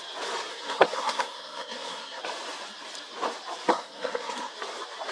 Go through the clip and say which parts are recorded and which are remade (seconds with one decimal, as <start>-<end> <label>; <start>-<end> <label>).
0.0-0.5 recorded; 0.5-2.2 remade; 2.2-3.7 recorded; 3.7-4.5 remade; 4.5-5.1 recorded